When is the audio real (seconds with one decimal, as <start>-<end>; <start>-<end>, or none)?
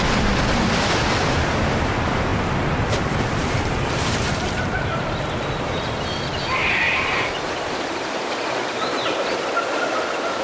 0.0-2.3; 5.2-6.6; 9.6-10.4